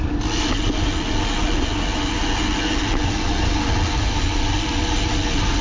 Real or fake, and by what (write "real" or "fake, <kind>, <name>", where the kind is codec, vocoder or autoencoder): real